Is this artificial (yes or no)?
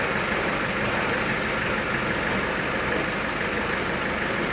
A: no